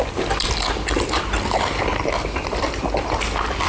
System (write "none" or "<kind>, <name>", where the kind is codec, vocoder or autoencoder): none